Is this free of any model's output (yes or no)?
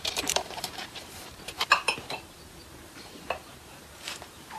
no